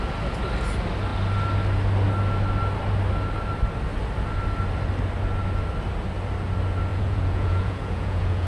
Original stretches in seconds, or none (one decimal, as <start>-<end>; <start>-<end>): 0.0-6.9